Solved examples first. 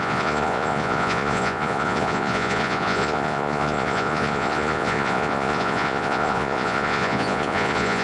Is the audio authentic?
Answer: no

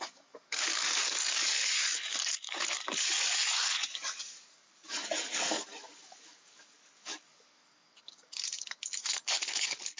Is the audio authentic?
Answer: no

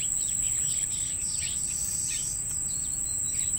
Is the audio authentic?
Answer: yes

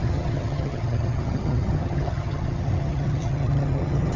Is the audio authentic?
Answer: no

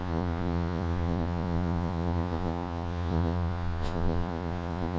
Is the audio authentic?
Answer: no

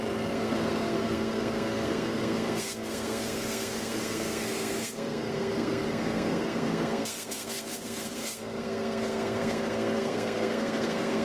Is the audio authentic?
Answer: no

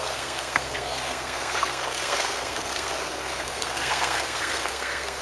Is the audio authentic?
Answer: no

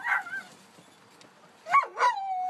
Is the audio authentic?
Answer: yes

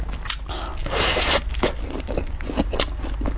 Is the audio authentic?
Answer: yes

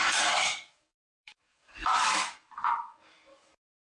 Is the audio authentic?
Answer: no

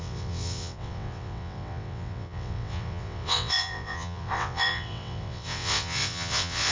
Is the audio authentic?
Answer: no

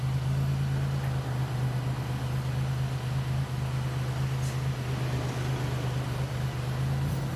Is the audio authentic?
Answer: yes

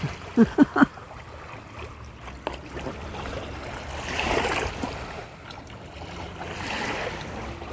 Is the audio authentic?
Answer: yes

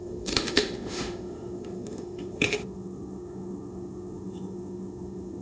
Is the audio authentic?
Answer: no